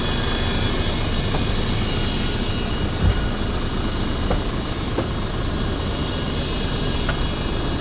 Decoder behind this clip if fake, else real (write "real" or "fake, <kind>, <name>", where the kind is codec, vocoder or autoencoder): real